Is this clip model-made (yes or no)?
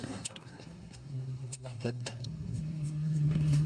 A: yes